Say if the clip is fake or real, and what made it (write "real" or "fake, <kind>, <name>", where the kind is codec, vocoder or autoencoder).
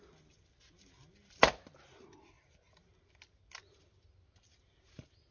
real